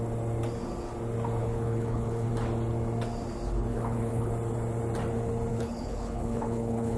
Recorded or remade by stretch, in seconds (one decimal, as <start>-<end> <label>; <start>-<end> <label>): 0.0-1.4 recorded; 1.4-2.3 remade; 2.3-3.7 recorded; 3.7-4.3 remade; 4.3-5.5 recorded; 5.5-7.0 remade